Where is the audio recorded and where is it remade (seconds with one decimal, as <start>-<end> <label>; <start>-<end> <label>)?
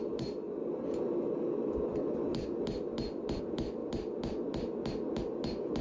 0.0-5.8 recorded